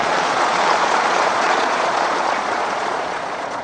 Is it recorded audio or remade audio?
remade